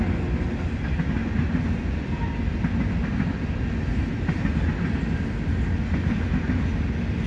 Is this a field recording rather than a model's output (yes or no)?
yes